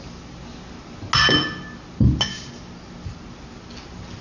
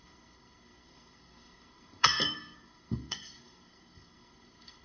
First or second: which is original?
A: first